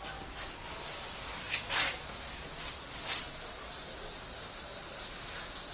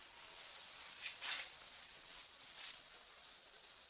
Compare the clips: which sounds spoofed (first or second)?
second